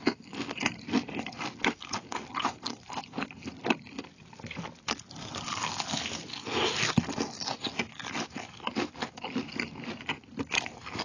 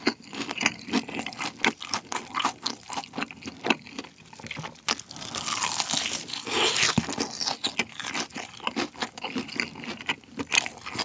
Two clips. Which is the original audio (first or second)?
second